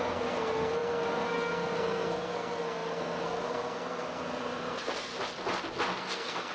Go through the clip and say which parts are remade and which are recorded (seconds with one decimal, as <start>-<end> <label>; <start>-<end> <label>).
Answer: 0.0-5.1 remade; 5.1-6.0 recorded; 6.0-6.5 remade